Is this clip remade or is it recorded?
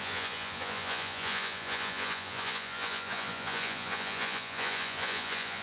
remade